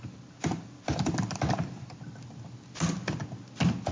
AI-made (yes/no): no